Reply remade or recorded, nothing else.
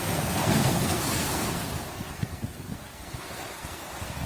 remade